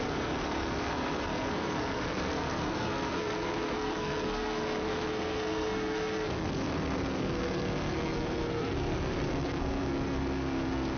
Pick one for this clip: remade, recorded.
remade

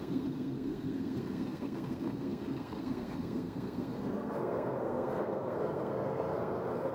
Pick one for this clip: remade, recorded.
remade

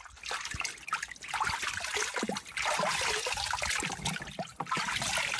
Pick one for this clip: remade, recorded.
recorded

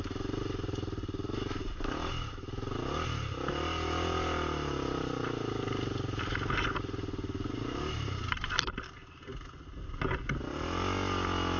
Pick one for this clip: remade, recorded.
recorded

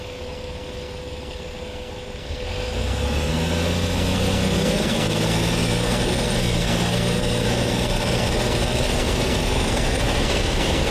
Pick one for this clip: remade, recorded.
remade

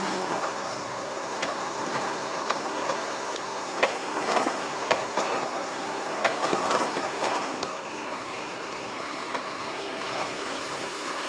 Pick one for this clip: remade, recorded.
remade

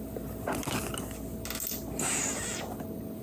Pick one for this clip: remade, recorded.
recorded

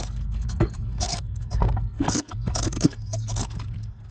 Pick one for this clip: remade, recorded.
remade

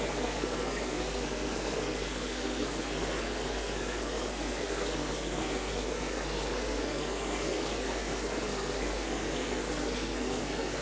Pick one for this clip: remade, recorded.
remade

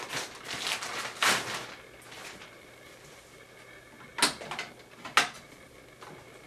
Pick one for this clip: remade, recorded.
recorded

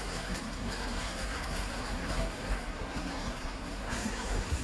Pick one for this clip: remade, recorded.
remade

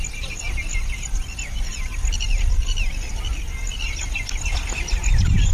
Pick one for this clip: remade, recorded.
recorded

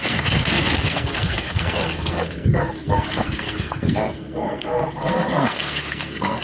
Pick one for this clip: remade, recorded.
remade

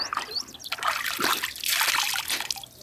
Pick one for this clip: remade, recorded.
recorded